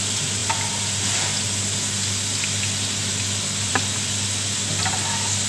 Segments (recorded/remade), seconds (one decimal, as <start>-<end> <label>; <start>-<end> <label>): 0.0-5.5 recorded